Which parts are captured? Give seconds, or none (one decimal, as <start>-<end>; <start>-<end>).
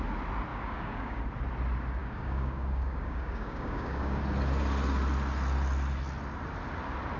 0.0-0.5; 1.2-2.0; 4.2-7.2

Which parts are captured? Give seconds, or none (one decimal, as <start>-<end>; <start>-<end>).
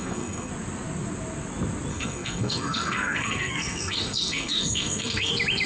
0.5-1.9; 5.3-5.7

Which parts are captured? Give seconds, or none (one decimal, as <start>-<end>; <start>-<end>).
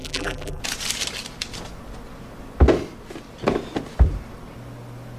0.6-5.2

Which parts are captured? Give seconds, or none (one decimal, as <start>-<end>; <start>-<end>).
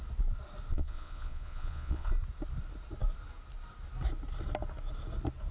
0.0-0.7; 2.1-5.5